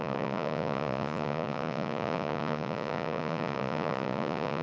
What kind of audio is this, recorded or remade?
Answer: remade